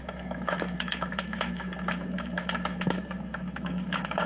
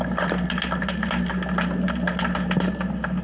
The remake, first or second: first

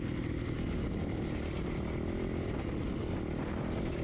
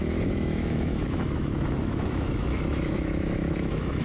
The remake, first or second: second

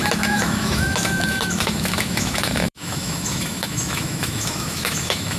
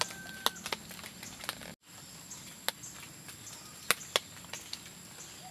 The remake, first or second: first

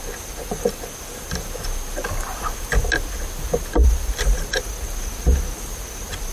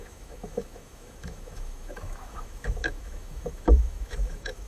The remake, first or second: second